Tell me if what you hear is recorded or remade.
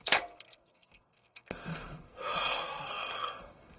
remade